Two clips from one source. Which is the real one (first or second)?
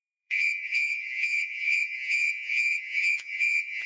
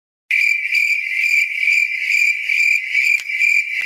second